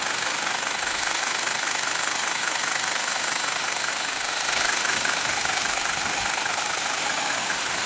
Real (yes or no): no